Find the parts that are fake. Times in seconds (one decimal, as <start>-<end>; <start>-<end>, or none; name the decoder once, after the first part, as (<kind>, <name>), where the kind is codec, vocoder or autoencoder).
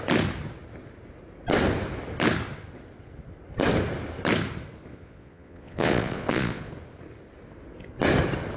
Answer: 4.9-6.7 (vocoder, Vocos)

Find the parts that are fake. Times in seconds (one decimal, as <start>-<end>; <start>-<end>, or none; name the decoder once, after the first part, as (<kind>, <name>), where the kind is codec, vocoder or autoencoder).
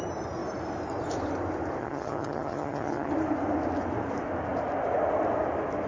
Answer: 1.8-3.1 (vocoder, HiFi-GAN)